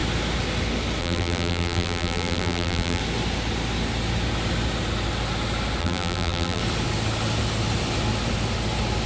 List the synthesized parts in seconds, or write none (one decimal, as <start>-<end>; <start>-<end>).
1.0-3.0; 5.8-6.6